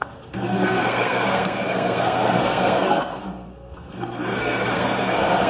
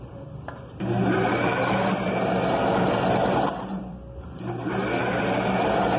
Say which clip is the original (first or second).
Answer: second